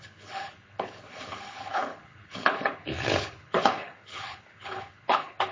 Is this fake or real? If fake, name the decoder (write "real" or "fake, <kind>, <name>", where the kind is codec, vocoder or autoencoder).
fake, codec, HILCodec